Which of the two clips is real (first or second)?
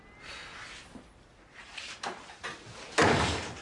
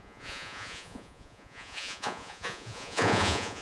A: first